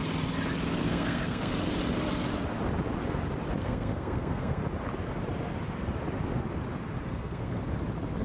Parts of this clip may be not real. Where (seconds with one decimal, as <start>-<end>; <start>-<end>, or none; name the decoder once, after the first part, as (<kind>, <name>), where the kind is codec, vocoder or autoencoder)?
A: 0.8-1.5 (codec, SNAC); 3.6-4.6; 7.1-7.6